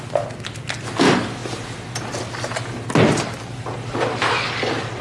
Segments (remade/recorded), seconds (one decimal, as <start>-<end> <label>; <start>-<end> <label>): 0.0-5.0 recorded